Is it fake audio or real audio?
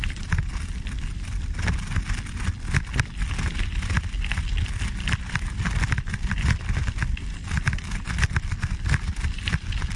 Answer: real